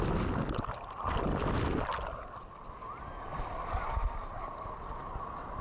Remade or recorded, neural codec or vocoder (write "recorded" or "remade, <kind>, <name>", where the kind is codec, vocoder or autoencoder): recorded